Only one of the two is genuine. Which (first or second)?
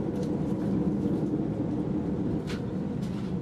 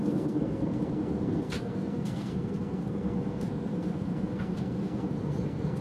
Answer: first